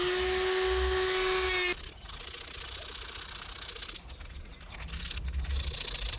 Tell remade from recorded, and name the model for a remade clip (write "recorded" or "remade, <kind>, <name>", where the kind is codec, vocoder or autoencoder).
recorded